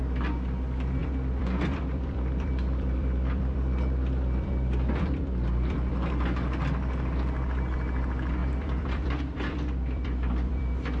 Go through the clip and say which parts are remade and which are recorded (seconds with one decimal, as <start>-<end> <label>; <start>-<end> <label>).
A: 0.0-1.0 recorded; 1.0-5.9 remade; 5.9-8.4 recorded; 8.4-11.0 remade